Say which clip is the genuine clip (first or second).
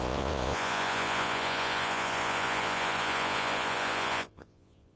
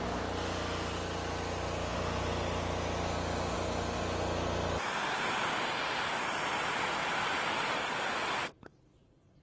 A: second